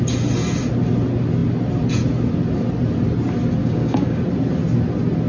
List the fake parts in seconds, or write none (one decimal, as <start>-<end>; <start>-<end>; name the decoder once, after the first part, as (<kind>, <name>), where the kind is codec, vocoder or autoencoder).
3.6-4.2 (codec, DAC)